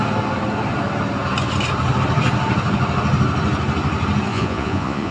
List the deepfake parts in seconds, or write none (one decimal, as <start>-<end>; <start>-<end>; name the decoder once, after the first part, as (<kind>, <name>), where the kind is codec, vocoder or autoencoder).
4.3-5.1 (vocoder, Vocos)